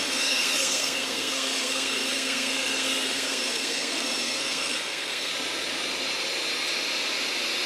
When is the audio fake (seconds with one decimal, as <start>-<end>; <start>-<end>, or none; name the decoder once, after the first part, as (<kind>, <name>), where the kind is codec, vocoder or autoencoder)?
0.0-5.3 (codec, SNAC)